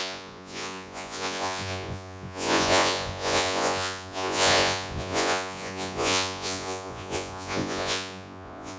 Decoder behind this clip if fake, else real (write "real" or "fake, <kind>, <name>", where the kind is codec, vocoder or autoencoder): fake, vocoder, Vocos